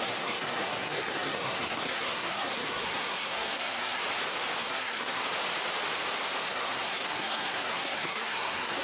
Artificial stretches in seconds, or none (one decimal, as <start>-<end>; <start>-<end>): 0.0-4.0; 4.6-5.2; 6.4-8.8